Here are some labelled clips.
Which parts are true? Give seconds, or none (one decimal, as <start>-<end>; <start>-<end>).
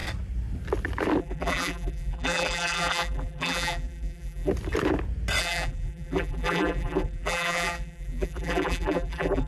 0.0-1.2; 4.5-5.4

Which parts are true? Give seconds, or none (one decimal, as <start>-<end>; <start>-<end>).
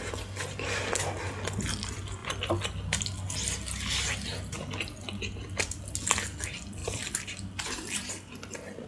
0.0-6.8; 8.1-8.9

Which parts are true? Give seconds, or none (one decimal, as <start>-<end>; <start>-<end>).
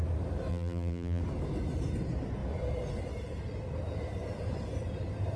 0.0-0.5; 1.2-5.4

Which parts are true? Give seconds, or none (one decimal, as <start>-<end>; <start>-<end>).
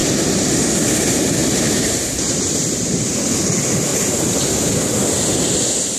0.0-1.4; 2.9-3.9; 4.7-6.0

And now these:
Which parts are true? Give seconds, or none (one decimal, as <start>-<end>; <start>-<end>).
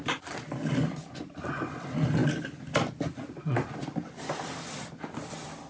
0.0-3.8; 4.8-5.7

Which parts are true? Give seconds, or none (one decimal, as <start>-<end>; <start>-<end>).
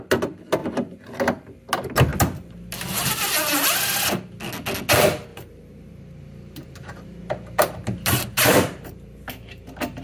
0.0-0.6; 1.2-5.3; 9.3-10.0